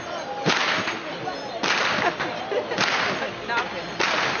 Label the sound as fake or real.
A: real